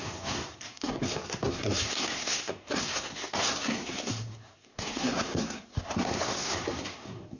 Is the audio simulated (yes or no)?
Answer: yes